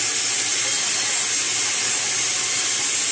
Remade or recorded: recorded